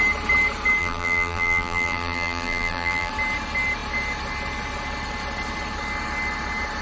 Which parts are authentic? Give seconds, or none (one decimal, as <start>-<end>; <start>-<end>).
0.0-0.8; 3.1-6.8